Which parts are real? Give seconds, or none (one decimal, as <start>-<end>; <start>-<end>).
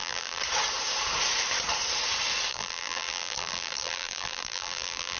0.4-2.5